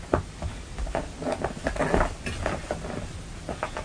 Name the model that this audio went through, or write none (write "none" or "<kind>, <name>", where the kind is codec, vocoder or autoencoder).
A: none